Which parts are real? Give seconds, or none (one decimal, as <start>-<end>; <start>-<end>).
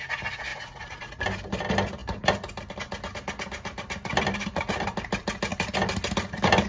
0.0-0.5; 1.2-6.7